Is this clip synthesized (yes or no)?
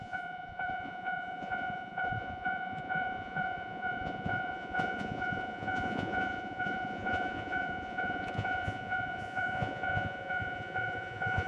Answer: yes